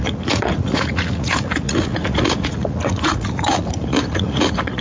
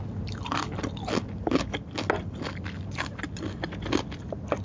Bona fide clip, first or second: second